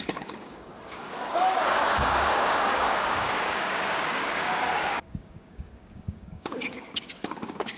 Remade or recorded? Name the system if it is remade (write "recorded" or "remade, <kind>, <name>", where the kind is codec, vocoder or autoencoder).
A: remade, codec, DAC